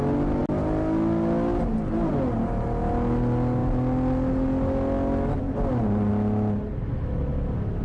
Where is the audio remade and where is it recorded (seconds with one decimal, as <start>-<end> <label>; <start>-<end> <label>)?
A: 0.0-7.8 recorded